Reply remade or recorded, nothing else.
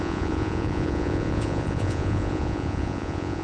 remade